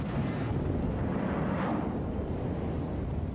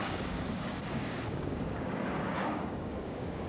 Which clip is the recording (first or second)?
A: first